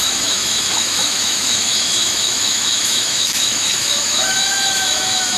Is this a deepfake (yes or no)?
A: yes